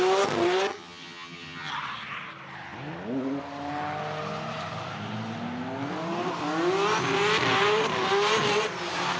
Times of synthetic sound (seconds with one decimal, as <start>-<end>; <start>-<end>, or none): 0.7-1.7